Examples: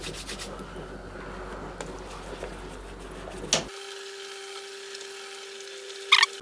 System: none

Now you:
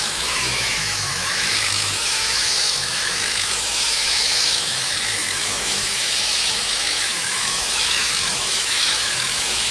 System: autoencoder, DAC-VAE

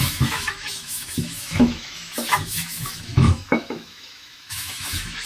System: autoencoder, DAC-VAE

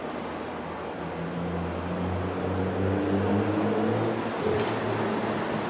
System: none